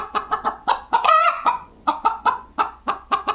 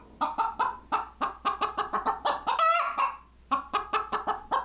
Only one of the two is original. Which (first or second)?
second